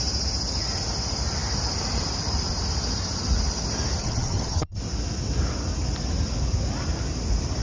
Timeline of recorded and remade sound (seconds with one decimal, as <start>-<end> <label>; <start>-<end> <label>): 0.0-4.0 recorded; 4.0-4.8 remade; 4.8-7.6 recorded